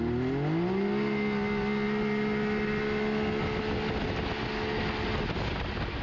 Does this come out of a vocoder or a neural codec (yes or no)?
no